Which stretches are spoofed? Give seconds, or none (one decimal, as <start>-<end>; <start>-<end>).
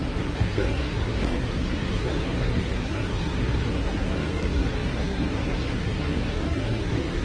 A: 0.0-7.2